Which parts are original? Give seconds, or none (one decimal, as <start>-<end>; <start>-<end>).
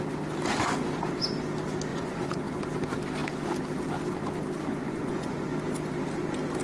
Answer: 0.0-1.9; 2.4-4.7; 5.5-6.6